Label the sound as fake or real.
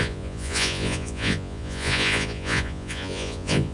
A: fake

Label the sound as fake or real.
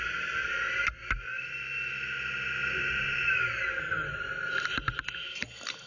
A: real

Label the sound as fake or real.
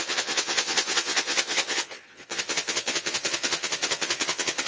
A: fake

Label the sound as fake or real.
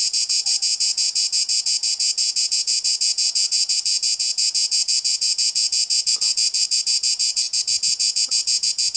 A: fake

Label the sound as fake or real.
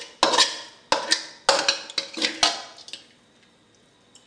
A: real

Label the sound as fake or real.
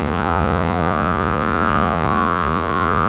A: fake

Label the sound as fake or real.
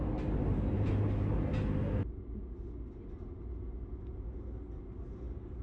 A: real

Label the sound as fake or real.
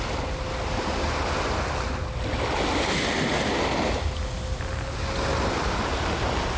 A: real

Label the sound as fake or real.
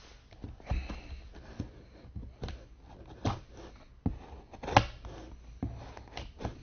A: real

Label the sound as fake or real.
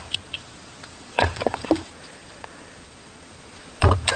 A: fake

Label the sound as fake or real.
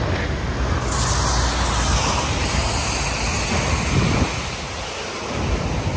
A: real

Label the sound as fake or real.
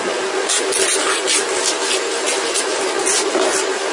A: real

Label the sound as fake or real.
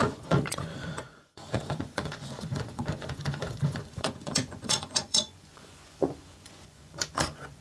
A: fake